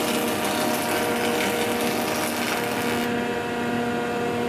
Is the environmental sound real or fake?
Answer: real